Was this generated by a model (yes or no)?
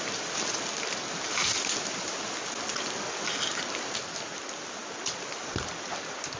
no